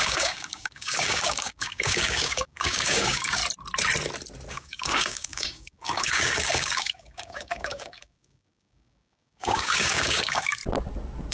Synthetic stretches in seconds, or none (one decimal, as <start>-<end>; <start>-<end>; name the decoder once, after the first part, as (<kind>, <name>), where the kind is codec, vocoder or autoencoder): 0.0-3.4 (codec, DAC); 4.5-10.6